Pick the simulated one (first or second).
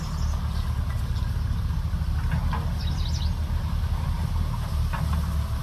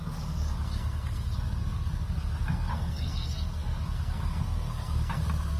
second